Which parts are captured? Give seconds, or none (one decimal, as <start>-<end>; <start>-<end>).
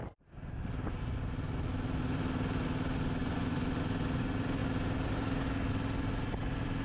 0.0-3.2; 3.8-6.8